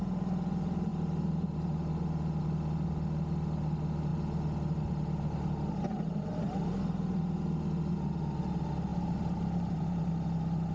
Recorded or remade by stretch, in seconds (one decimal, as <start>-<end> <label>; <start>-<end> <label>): 0.0-8.9 recorded; 8.9-10.1 remade; 10.1-10.7 recorded

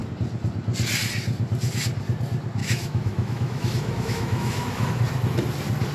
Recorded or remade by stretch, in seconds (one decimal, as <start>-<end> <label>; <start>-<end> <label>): 0.0-2.6 recorded; 2.6-4.9 remade; 4.9-5.9 recorded